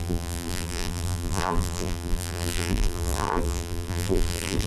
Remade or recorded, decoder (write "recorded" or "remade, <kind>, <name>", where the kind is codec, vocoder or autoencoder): remade, vocoder, BigVGAN v2